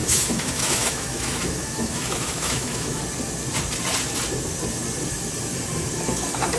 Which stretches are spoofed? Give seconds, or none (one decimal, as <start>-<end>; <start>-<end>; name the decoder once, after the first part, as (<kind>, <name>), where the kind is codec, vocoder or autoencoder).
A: 0.0-3.0 (autoencoder, DAC-VAE)